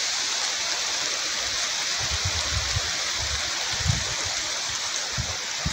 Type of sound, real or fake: real